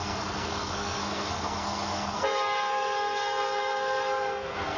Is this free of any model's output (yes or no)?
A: no